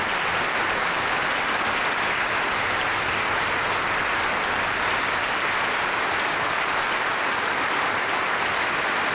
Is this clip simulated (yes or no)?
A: no